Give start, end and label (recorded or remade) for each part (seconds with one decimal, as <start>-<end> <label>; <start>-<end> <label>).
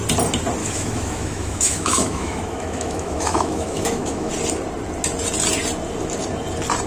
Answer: 0.0-0.6 recorded; 0.6-4.3 remade; 4.3-6.9 recorded